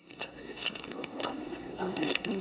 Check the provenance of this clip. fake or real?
fake